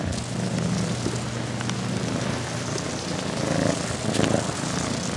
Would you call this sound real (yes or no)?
yes